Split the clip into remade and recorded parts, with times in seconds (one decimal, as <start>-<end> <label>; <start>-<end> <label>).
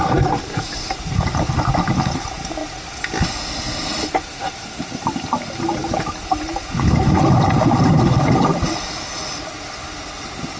0.0-10.6 recorded